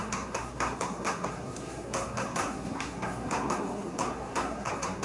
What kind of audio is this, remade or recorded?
remade